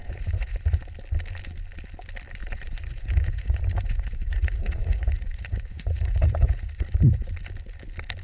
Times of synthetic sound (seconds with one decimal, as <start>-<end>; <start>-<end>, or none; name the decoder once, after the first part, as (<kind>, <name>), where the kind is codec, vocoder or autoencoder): 0.0-0.8 (vocoder, Vocos); 2.4-7.3